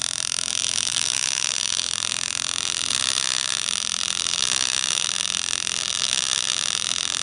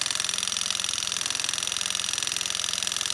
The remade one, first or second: first